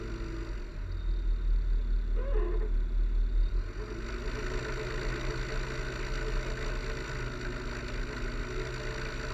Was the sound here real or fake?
real